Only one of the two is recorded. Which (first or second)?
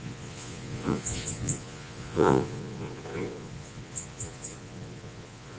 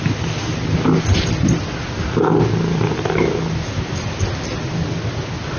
second